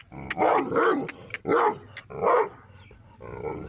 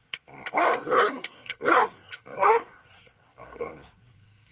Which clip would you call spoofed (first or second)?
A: second